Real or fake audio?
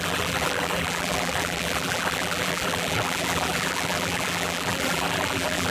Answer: fake